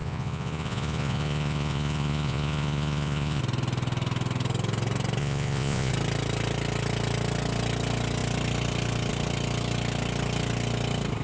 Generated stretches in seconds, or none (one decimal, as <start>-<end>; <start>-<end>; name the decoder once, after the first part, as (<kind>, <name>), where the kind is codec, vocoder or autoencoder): 0.0-3.4 (vocoder, Vocos); 5.2-5.9